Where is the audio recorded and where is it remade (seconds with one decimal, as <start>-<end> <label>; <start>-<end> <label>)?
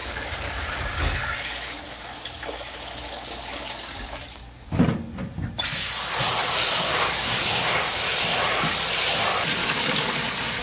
0.0-4.8 remade; 4.8-6.4 recorded; 6.4-7.6 remade; 7.6-9.6 recorded; 9.6-10.1 remade; 10.1-10.6 recorded